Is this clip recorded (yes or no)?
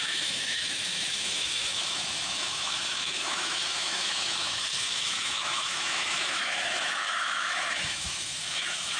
no